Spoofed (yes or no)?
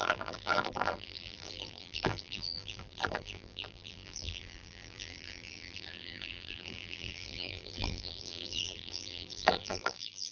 yes